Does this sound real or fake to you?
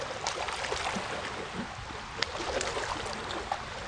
real